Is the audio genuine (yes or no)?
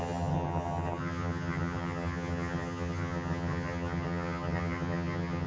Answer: no